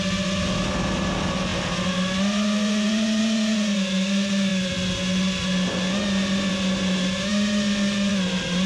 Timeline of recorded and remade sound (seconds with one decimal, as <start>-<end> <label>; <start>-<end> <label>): 0.0-8.7 recorded